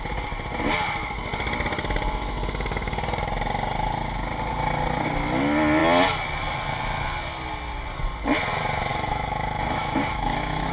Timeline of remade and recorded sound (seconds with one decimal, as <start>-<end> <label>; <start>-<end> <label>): 0.0-8.9 recorded; 8.9-10.7 remade